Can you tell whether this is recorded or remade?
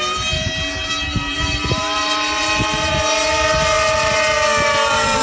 remade